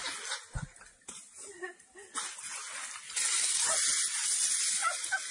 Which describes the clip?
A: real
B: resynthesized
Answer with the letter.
A